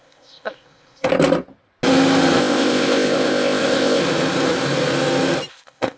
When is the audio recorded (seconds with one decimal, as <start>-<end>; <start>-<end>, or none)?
1.1-2.4; 4.0-5.5